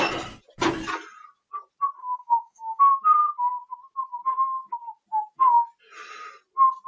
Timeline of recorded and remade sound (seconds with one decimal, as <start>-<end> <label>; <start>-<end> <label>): 0.0-2.0 recorded; 2.0-2.8 remade; 2.8-6.9 recorded